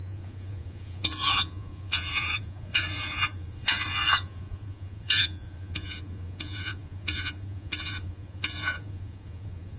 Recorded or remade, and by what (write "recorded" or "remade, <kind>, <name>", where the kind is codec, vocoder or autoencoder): remade, vocoder, Vocos